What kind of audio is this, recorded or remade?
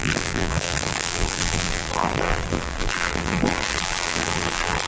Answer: remade